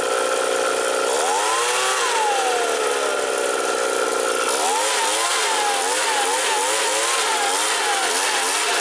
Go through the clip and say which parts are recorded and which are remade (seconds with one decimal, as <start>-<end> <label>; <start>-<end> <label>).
0.0-8.8 recorded